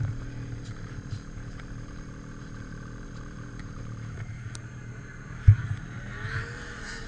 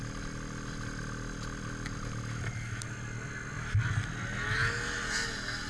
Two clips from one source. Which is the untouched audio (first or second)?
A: second